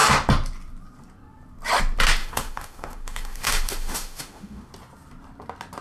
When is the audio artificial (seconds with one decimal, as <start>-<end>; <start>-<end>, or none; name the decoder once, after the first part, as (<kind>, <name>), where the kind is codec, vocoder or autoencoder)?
2.2-4.7 (autoencoder, DAC-VAE)